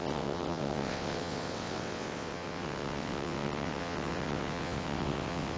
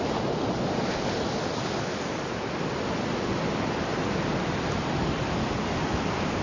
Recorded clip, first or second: second